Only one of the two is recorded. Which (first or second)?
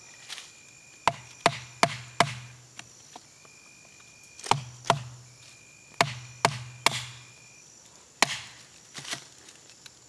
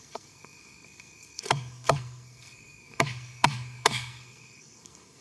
first